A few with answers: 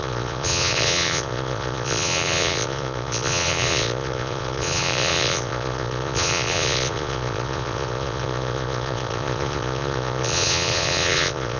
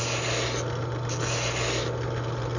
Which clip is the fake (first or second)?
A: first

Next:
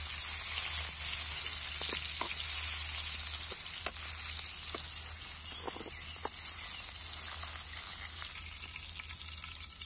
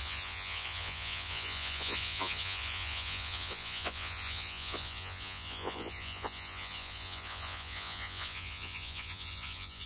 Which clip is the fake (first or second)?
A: second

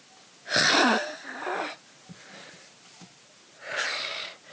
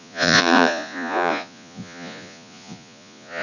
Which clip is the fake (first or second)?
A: second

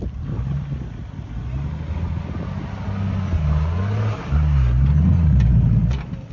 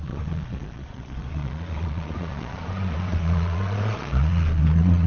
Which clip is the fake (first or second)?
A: second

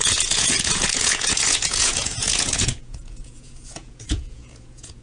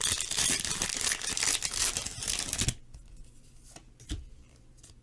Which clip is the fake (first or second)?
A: first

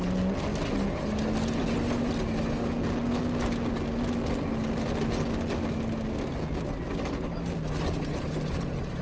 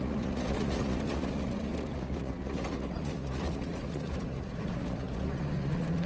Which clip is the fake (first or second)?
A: second